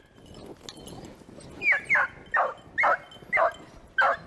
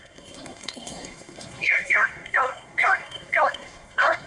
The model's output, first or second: second